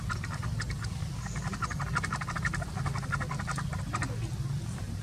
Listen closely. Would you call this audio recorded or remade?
recorded